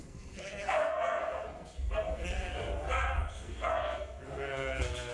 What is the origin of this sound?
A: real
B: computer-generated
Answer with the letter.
B